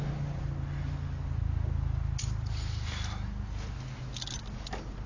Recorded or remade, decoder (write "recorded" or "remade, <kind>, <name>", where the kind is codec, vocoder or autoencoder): recorded